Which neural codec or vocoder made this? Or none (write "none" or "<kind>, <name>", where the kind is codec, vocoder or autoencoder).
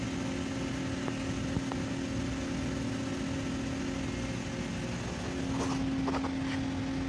none